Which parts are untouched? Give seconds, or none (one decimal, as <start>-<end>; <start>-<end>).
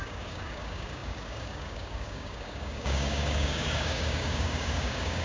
none